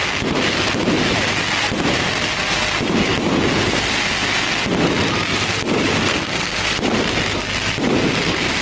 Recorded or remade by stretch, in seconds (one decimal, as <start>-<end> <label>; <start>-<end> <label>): 0.0-6.0 recorded; 6.0-6.7 remade; 6.7-8.6 recorded